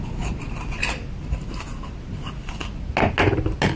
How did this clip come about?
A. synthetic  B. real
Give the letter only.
B